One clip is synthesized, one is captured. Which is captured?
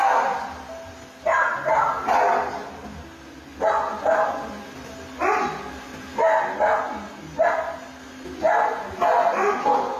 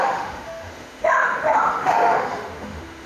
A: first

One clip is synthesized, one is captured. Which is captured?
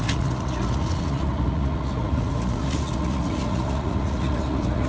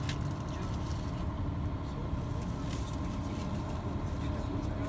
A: second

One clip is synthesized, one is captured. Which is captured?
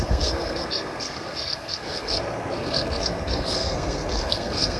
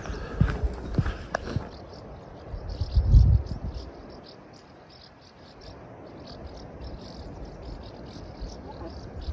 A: second